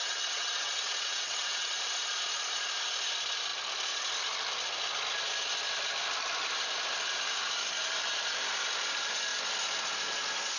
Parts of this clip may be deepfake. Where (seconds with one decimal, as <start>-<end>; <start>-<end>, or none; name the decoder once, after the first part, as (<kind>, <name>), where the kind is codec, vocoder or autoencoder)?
0.0-1.7 (vocoder, WaveNeXt)